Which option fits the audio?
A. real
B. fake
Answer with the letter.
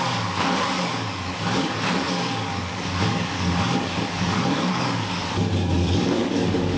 B